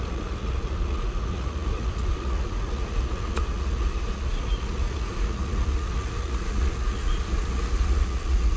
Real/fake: fake